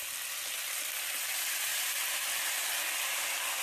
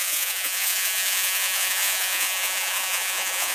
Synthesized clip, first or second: second